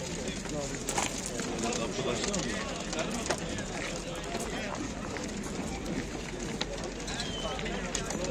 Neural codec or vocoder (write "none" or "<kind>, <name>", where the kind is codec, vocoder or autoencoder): none